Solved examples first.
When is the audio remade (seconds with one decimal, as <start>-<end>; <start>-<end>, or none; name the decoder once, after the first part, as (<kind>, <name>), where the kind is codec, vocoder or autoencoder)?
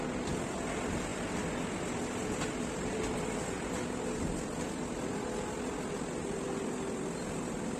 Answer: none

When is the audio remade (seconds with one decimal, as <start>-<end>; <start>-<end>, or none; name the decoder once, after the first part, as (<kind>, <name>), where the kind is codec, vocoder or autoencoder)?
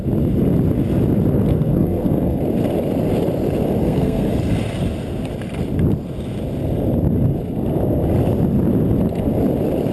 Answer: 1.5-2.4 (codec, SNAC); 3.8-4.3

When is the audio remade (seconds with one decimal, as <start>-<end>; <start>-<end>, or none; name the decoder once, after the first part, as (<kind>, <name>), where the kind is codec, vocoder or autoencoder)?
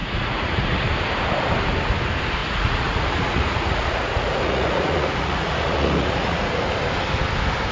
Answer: 0.0-0.8 (vocoder, Vocos); 2.4-6.7